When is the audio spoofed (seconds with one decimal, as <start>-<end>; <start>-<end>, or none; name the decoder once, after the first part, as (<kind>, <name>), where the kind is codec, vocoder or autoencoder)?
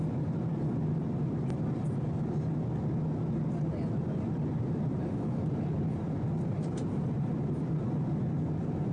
6.5-7.3 (vocoder, BigVGAN v2)